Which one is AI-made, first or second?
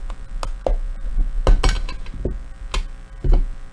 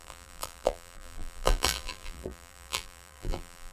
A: second